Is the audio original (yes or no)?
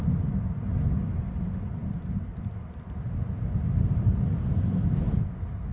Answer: yes